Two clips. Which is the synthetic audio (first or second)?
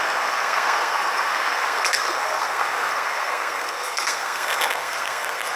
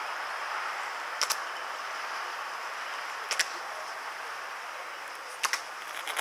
first